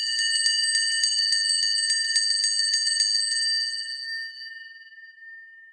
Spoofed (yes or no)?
no